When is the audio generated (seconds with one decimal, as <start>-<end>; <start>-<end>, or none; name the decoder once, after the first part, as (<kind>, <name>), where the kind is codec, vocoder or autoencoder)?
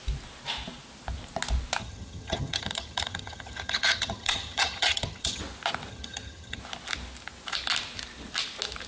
1.8-5.4 (vocoder, HiFi-GAN); 5.9-6.6